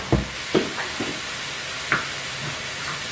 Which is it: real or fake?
real